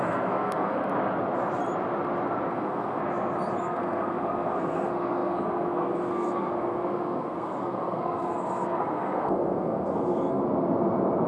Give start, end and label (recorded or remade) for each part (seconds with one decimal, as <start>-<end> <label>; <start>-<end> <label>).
0.0-0.8 remade; 0.8-2.5 recorded; 2.5-3.0 remade; 3.0-3.6 recorded; 3.6-10.4 remade; 10.4-11.3 recorded